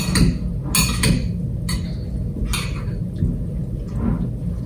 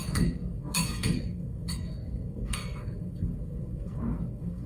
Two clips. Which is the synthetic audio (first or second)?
second